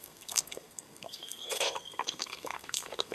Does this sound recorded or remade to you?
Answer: remade